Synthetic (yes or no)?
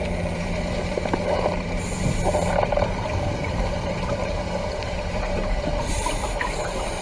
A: yes